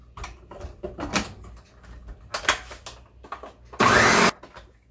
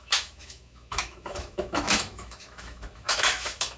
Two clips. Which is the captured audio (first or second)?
first